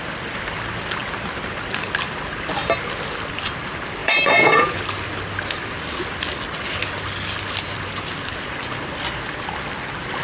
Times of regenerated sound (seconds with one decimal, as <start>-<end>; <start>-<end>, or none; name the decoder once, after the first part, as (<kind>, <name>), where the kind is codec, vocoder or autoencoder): 4.0-4.8 (vocoder, Vocos)